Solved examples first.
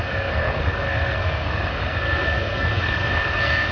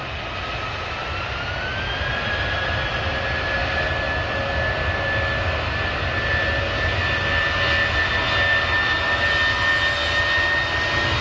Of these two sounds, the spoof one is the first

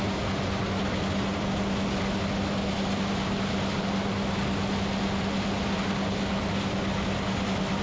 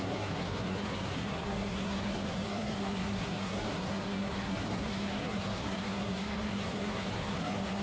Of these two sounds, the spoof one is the second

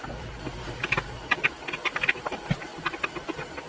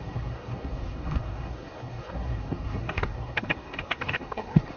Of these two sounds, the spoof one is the second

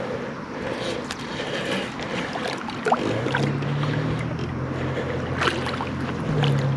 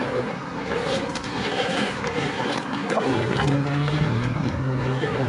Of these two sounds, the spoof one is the second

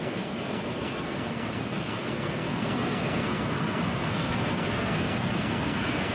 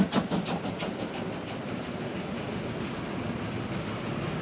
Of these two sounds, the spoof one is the first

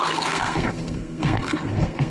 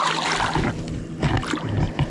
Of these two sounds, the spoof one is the first